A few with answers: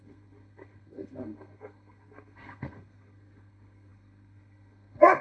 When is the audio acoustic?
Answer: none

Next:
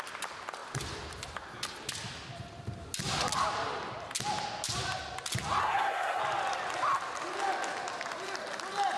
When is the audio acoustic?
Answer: 0.0-5.6; 6.2-9.0

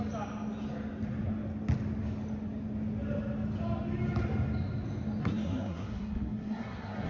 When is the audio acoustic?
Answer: 0.0-5.2

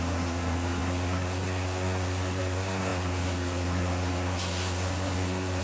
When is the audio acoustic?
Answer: none